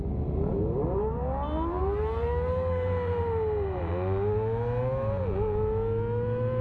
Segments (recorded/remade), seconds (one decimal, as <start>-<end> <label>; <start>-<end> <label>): 0.0-0.5 recorded; 0.5-3.9 remade; 3.9-6.6 recorded